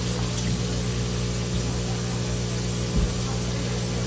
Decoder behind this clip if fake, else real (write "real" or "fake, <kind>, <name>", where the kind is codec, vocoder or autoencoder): real